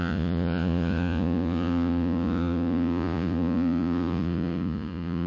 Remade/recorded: remade